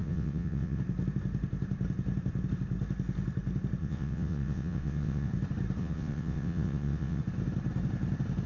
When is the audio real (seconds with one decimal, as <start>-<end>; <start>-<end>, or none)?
0.8-3.8; 5.3-5.8; 7.2-8.5